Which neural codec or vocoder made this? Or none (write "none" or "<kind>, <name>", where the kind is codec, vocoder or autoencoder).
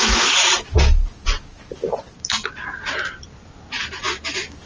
none